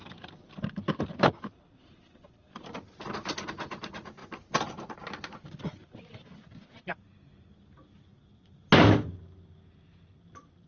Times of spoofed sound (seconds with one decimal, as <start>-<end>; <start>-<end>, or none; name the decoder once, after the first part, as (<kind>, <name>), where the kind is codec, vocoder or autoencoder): 0.0-2.7 (vocoder, BigVGAN v2)